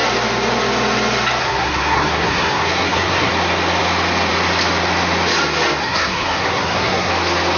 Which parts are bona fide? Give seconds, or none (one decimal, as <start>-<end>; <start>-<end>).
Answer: 0.0-1.4; 3.3-5.8; 7.1-7.6